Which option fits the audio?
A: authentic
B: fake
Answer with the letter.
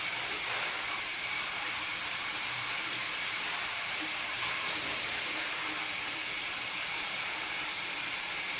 B